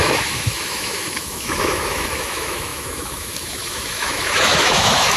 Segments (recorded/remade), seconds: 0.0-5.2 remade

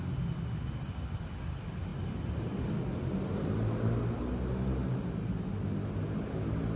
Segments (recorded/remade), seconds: 0.0-6.8 recorded

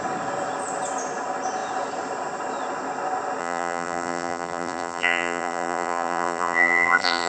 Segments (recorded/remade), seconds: 0.0-3.4 recorded; 3.4-7.3 remade